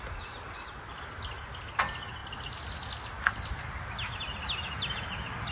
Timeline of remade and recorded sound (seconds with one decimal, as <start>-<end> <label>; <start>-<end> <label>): 0.0-5.5 recorded